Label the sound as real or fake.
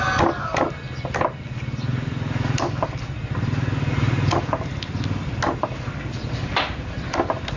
real